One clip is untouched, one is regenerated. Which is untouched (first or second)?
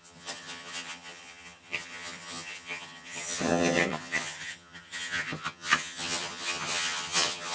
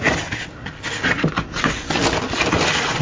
second